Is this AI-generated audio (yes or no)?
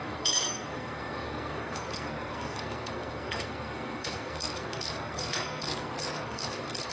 yes